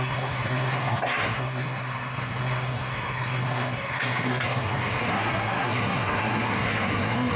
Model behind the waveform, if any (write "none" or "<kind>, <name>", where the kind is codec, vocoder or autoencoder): codec, SNAC